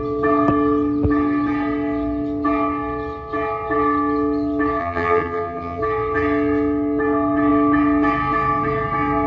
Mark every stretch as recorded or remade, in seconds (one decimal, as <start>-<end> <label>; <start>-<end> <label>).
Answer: 0.0-4.8 recorded; 4.8-5.8 remade; 5.8-9.3 recorded